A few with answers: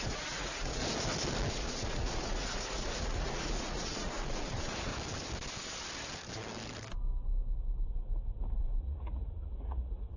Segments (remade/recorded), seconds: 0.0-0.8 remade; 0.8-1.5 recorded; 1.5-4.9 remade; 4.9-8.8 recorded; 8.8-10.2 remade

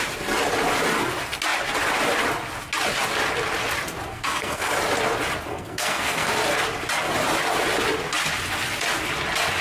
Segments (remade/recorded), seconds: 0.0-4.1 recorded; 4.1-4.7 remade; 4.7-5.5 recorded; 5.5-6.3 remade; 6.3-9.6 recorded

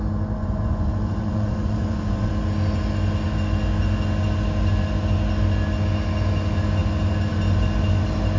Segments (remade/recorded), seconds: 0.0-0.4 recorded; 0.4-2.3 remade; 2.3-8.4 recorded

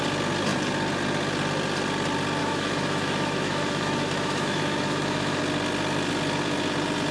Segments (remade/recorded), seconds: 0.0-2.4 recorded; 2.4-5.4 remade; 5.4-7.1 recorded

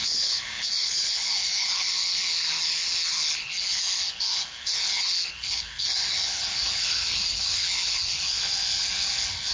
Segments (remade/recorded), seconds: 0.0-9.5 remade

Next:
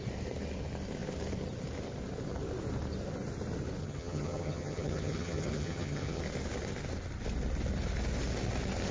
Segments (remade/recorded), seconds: 0.0-3.8 recorded; 3.8-6.2 remade; 6.2-8.9 recorded

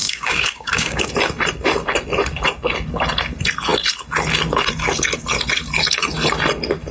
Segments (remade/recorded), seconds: 0.0-1.1 remade; 1.1-6.9 recorded

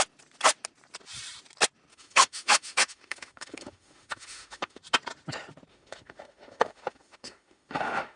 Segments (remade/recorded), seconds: 0.0-1.9 recorded; 1.9-4.8 remade; 4.8-5.7 recorded; 5.7-8.2 remade